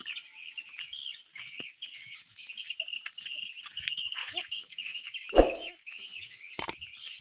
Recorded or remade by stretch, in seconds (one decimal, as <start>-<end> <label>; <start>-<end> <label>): 0.0-1.3 recorded; 1.3-2.5 remade; 2.5-4.2 recorded; 4.2-6.4 remade; 6.4-7.2 recorded